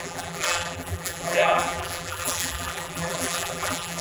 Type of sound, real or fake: fake